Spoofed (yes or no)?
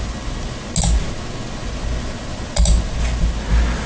no